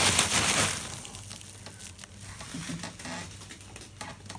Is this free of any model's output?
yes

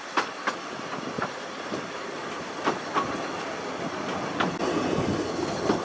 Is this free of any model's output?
yes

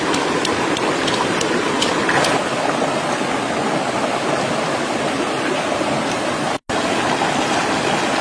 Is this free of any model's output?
yes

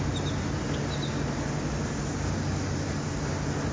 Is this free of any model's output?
yes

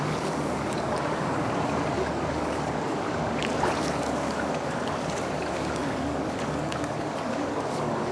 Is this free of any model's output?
no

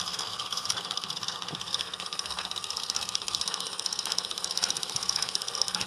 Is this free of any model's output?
no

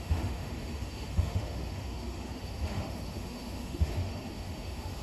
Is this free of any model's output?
no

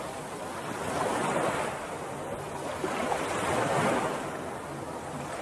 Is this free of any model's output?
yes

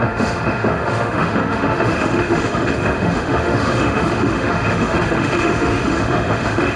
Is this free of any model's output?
no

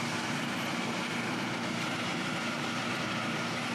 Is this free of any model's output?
no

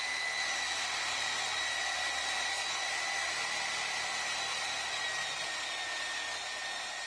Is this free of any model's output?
yes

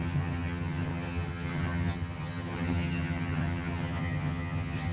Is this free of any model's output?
no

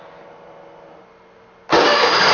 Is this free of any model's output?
no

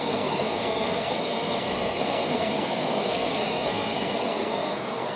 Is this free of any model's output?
no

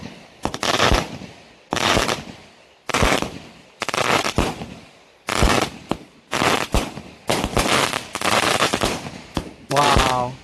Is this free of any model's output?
yes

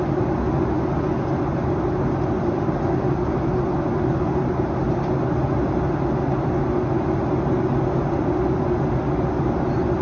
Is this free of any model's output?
yes